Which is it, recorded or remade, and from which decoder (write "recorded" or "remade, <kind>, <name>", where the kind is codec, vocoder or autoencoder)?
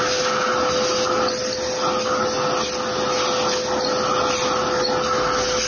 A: recorded